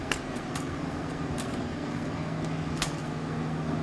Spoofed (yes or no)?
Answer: yes